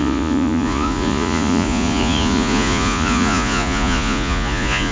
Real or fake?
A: fake